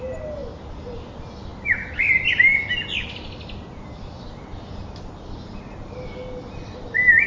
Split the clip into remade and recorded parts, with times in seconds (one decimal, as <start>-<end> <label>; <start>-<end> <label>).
0.0-7.3 recorded